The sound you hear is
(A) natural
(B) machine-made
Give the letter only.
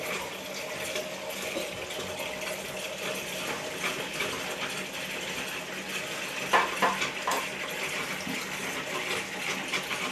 A